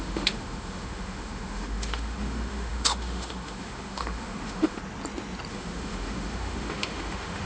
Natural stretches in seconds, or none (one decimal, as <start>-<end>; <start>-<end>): 4.8-5.5